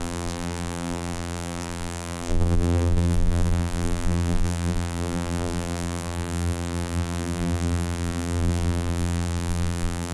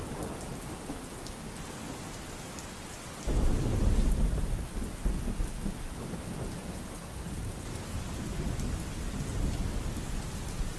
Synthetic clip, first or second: first